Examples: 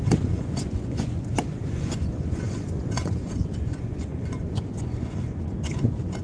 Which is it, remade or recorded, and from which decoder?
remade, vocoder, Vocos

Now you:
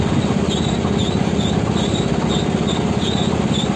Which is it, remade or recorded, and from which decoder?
recorded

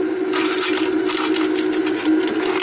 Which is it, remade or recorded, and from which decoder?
recorded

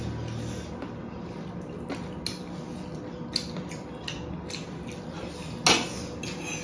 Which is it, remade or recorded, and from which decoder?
recorded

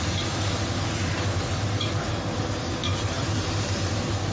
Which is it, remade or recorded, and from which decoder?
recorded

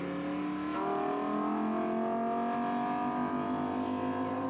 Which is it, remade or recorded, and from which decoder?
recorded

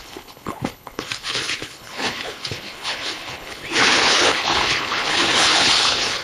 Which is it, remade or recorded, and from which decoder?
remade, codec, HILCodec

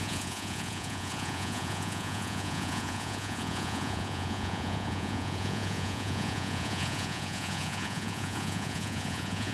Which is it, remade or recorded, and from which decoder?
remade, vocoder, Vocos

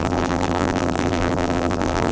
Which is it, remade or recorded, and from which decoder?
remade, vocoder, BigVGAN v2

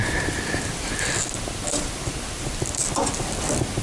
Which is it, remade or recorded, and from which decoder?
recorded